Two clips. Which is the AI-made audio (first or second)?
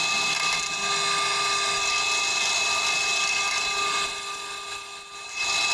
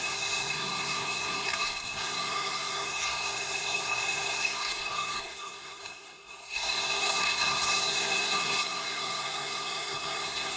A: second